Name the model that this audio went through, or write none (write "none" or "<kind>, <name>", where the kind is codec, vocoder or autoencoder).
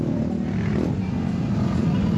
none